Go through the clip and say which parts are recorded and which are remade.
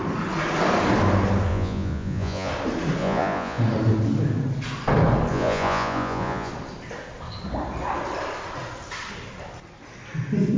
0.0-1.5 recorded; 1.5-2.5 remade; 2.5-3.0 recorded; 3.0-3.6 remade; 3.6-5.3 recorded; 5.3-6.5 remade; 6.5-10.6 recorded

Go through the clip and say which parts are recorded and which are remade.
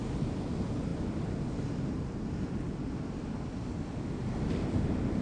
0.0-5.2 recorded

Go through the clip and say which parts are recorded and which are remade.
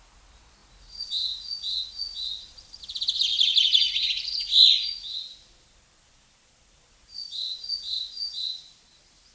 0.0-9.3 recorded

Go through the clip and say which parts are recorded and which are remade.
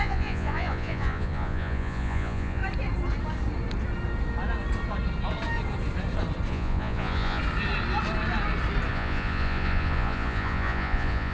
0.0-2.6 remade; 2.6-6.5 recorded; 6.5-7.4 remade; 7.4-8.9 recorded; 8.9-11.3 remade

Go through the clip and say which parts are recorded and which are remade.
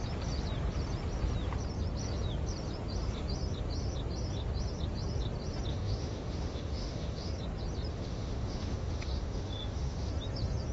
0.0-5.7 recorded; 5.7-7.3 remade; 7.3-7.9 recorded; 7.9-10.1 remade; 10.1-10.7 recorded